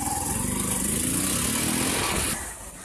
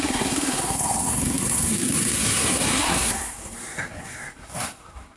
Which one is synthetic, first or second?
second